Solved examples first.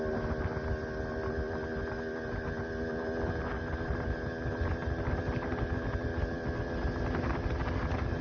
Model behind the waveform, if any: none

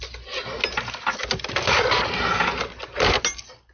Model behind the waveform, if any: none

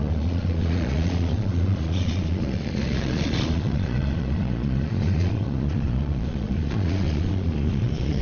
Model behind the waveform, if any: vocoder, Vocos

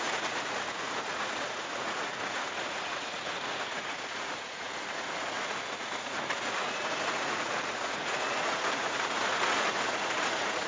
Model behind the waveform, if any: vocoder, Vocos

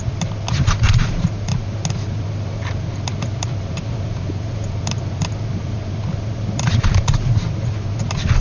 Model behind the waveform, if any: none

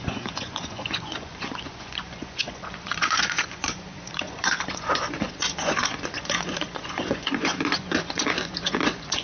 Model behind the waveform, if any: vocoder, Vocos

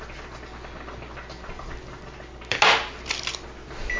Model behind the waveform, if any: none